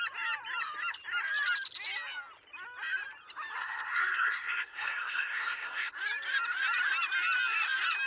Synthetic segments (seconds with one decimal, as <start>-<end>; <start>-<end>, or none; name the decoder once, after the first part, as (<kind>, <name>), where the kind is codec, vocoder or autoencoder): 3.6-5.9 (codec, SNAC)